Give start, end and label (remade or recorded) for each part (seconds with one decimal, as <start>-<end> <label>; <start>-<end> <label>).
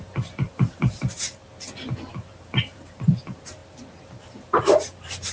0.0-1.4 remade; 1.4-2.1 recorded; 2.1-3.6 remade; 3.6-4.6 recorded; 4.6-5.3 remade